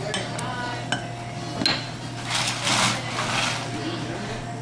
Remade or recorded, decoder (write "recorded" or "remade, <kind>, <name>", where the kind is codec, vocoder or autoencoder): recorded